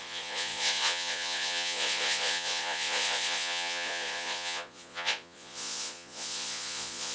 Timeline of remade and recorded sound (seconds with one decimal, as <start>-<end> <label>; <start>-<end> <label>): 0.0-7.1 remade